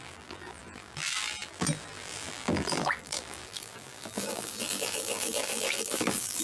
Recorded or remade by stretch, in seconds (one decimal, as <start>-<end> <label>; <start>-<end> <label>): 0.0-6.4 remade